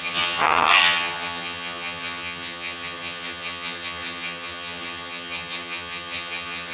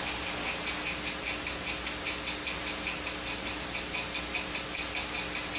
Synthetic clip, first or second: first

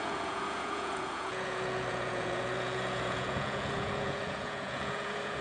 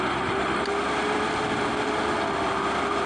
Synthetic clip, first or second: first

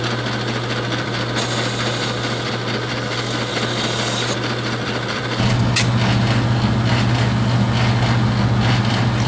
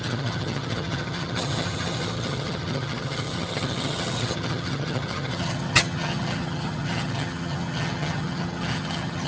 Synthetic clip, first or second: second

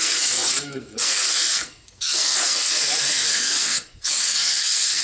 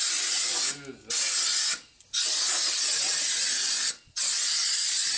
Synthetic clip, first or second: first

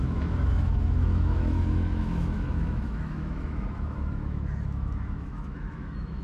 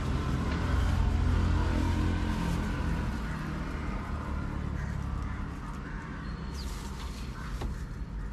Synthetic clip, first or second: first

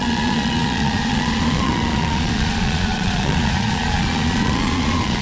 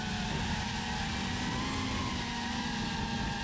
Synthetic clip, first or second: first